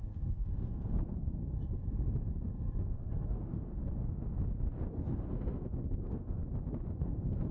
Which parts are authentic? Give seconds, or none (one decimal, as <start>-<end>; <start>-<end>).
1.4-2.8; 3.8-5.0; 6.4-7.0